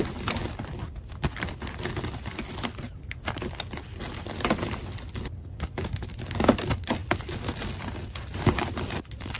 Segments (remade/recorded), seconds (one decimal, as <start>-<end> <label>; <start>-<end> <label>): 0.0-0.4 remade; 0.4-1.1 recorded; 1.1-3.9 remade; 3.9-5.4 recorded; 5.4-7.0 remade; 7.0-8.2 recorded; 8.2-9.4 remade